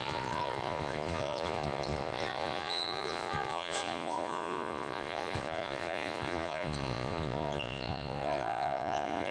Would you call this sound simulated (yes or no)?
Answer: yes